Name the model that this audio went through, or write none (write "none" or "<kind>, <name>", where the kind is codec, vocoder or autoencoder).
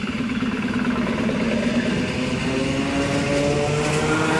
none